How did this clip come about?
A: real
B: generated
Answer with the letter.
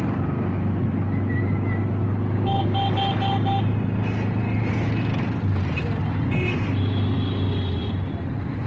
A